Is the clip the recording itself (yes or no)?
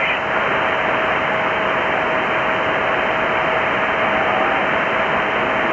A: yes